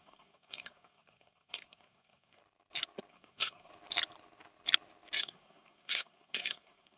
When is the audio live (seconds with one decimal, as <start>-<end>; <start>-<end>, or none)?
2.4-3.1; 3.7-5.2